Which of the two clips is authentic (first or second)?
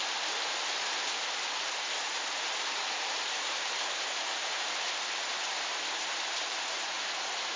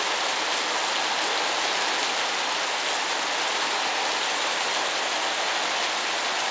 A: second